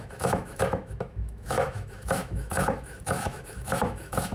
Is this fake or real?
fake